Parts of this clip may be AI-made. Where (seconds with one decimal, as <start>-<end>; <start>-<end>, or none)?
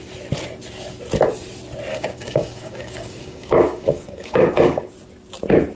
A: 1.9-4.9